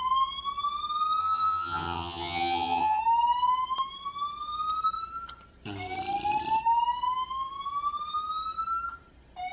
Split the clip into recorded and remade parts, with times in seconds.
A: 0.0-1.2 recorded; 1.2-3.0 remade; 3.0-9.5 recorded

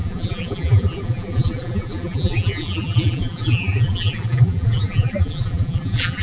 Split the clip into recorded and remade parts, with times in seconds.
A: 0.0-6.2 remade

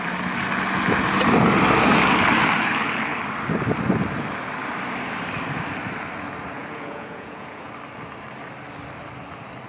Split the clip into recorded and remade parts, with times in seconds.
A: 0.0-6.6 recorded; 6.6-7.7 remade; 7.7-9.7 recorded

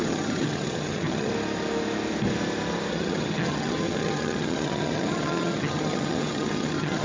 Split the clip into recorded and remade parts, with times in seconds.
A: 0.0-1.3 remade; 1.3-2.9 recorded; 2.9-7.0 remade

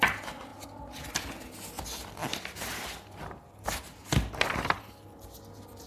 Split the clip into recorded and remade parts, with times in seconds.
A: 0.0-5.9 recorded

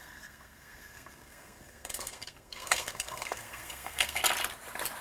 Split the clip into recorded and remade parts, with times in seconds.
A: 0.0-4.2 remade; 4.2-5.0 recorded